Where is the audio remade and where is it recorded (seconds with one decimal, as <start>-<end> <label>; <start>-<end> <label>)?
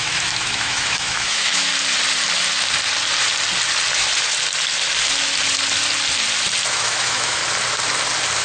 0.0-1.7 remade; 1.7-6.7 recorded; 6.7-7.4 remade; 7.4-8.4 recorded